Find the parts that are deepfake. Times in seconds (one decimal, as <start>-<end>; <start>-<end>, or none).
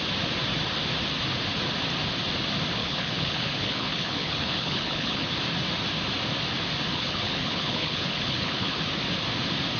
2.8-5.3; 6.9-8.8